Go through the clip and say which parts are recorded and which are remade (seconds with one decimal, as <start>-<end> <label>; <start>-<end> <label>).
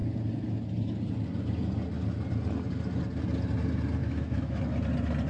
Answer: 0.0-4.0 recorded; 4.0-4.6 remade; 4.6-5.3 recorded